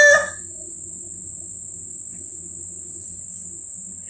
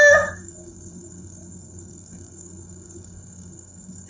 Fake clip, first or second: second